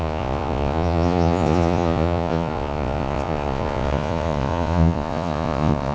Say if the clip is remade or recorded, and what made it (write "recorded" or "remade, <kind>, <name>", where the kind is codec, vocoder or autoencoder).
remade, vocoder, Vocos